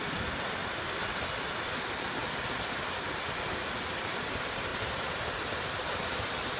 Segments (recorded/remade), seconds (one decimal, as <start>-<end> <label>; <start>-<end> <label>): 0.0-4.7 recorded; 4.7-5.5 remade; 5.5-6.6 recorded